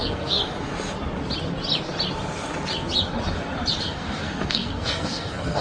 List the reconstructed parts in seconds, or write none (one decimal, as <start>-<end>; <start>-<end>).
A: 0.0-0.4; 3.8-5.6